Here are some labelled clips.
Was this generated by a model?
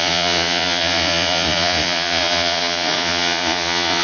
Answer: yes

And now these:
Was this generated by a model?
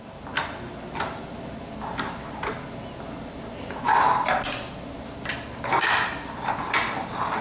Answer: no